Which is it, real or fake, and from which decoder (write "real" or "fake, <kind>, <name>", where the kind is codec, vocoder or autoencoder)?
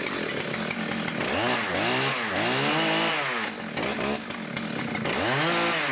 real